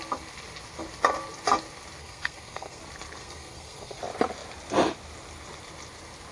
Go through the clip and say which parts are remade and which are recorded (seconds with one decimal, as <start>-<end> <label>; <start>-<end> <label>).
0.0-2.0 recorded; 2.0-2.8 remade; 2.8-3.2 recorded; 3.2-4.0 remade; 4.0-6.3 recorded